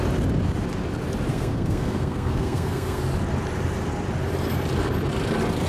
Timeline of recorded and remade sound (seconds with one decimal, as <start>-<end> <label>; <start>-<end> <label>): 0.0-1.3 recorded; 1.3-3.0 remade; 3.0-5.7 recorded